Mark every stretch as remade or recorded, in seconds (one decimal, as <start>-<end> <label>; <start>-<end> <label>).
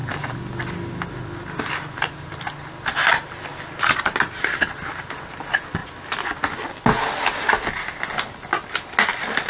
0.0-9.5 recorded